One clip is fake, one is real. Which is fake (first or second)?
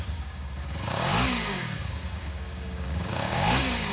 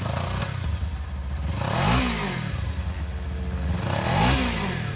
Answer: first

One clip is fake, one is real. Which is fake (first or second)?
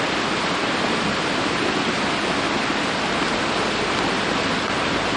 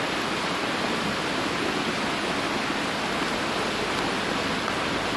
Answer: first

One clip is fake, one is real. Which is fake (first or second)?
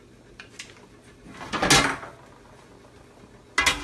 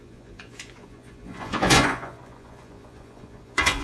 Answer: second